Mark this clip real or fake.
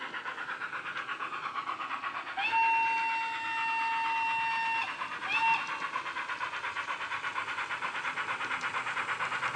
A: real